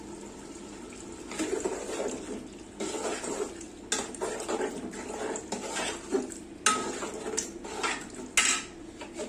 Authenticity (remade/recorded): recorded